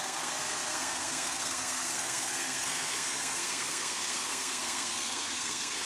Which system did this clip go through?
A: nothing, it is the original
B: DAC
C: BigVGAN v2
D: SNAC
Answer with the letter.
D